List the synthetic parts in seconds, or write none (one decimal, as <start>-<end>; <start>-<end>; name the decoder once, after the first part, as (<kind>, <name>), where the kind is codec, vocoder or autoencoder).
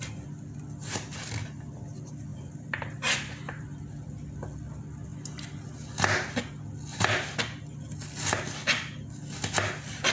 2.3-3.8 (vocoder, BigVGAN v2)